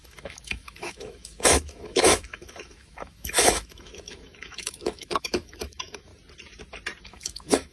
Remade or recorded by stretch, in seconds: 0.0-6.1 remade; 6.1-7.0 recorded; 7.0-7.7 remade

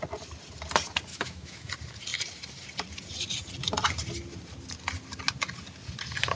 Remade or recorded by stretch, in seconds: 0.0-1.1 recorded; 1.1-1.7 remade; 1.7-6.4 recorded

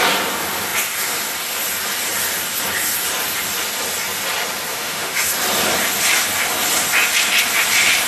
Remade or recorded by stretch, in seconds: 0.0-4.7 recorded; 4.7-5.3 remade; 5.3-8.1 recorded